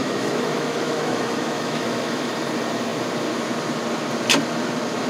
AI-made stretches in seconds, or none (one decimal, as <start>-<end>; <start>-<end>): 0.0-2.3